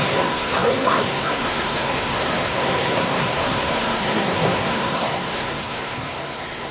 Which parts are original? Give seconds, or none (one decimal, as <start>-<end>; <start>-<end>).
none

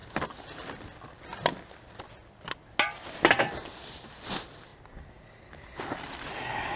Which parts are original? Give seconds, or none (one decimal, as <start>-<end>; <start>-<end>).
0.0-6.8